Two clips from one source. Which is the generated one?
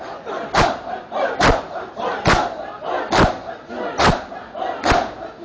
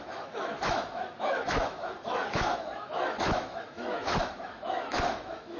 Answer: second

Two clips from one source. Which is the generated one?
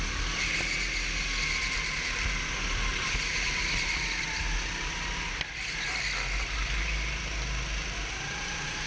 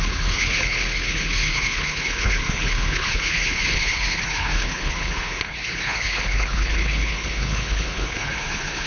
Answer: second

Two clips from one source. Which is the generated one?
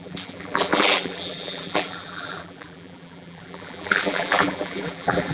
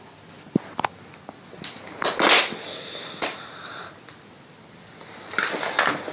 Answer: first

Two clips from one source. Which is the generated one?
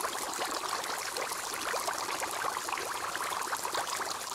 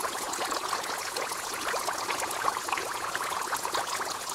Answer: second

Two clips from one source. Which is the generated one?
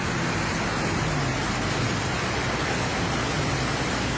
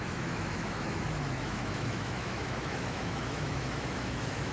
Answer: second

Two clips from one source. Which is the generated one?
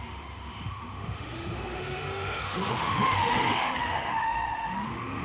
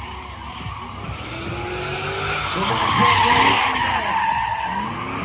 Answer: first